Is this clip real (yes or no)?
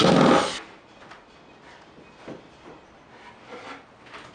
yes